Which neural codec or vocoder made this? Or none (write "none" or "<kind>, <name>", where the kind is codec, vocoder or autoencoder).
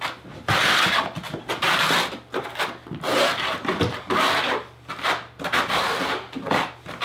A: none